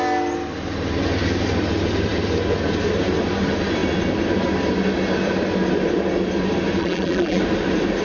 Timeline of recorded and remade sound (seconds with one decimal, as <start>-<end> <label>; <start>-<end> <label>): 0.0-6.8 recorded; 6.8-7.4 remade; 7.4-8.0 recorded